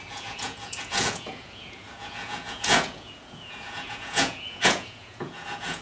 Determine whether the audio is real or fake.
fake